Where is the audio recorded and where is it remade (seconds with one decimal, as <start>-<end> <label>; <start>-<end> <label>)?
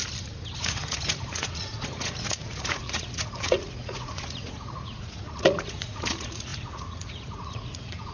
0.0-0.6 recorded; 0.6-8.1 remade